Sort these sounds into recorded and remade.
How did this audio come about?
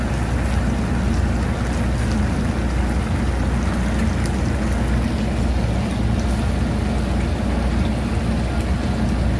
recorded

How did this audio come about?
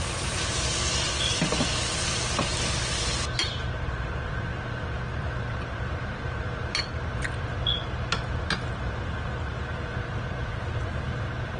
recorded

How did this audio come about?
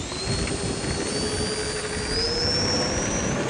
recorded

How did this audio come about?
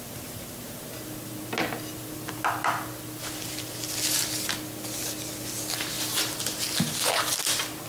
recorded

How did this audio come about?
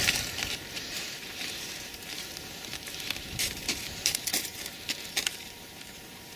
remade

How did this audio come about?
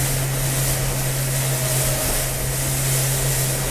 recorded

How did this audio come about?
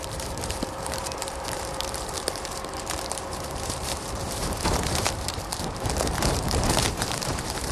remade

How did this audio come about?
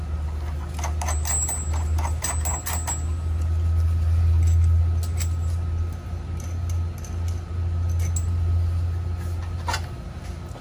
recorded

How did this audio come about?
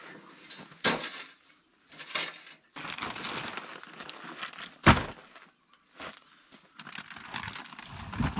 recorded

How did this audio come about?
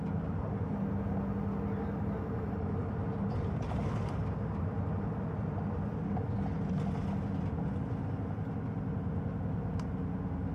recorded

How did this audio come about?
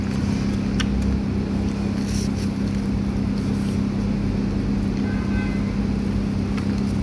recorded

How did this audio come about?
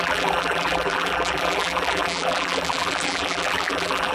remade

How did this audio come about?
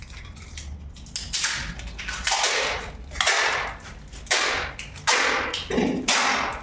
recorded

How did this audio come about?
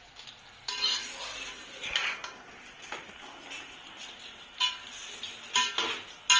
recorded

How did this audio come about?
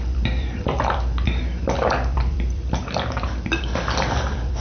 remade